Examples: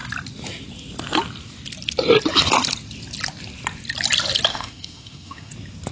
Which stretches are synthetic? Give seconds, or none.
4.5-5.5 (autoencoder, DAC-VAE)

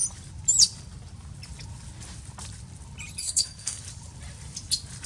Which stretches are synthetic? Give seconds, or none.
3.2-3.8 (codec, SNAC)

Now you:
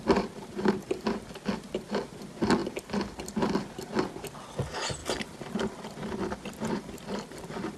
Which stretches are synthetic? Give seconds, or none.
none

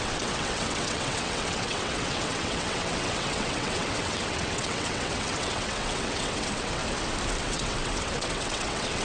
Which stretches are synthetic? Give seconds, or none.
0.0-6.8 (vocoder, WaveNeXt); 7.4-9.0

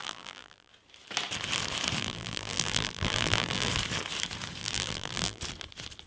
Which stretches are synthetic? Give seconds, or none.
0.0-0.7 (vocoder, BigVGAN v2); 2.0-3.7; 4.6-5.4

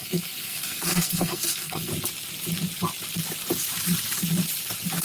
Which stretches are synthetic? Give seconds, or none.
0.0-1.9 (codec, SNAC)